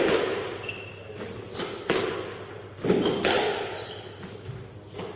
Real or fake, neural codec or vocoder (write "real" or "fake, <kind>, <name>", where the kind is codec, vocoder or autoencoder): real